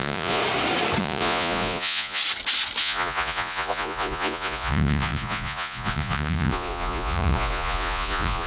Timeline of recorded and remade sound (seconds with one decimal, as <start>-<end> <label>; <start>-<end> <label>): 0.0-0.4 remade; 0.4-1.0 recorded; 1.0-2.2 remade; 2.2-2.8 recorded; 2.8-8.5 remade